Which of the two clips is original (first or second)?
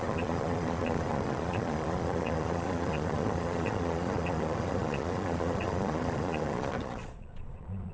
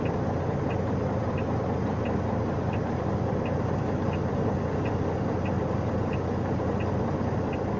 second